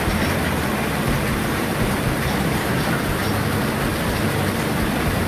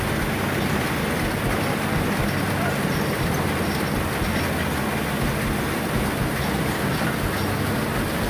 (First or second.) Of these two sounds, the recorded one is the second